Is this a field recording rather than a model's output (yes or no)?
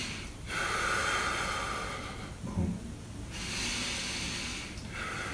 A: yes